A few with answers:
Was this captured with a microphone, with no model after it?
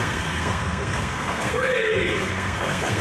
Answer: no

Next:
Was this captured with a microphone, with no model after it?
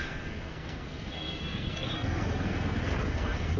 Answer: no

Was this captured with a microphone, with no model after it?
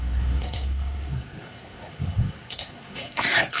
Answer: no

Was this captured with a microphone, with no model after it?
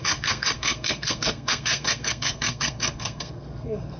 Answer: no